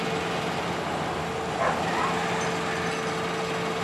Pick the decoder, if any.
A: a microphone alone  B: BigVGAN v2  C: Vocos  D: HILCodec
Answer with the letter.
A